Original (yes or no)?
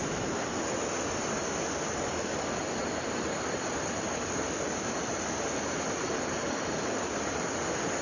yes